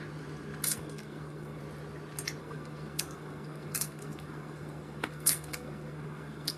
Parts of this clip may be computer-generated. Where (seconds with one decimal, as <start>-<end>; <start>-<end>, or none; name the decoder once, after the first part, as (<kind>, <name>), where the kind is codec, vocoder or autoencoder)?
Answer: 0.7-1.6 (codec, SNAC); 2.4-6.6